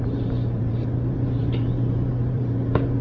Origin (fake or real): fake